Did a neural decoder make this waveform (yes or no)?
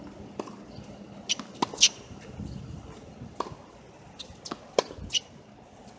no